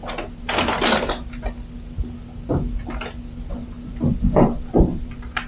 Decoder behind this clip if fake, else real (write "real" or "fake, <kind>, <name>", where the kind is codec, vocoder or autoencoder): real